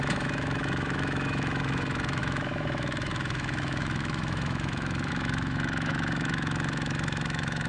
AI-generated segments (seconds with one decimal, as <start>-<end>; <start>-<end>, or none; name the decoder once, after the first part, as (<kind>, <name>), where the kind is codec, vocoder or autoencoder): 0.0-7.7 (autoencoder, DAC-VAE)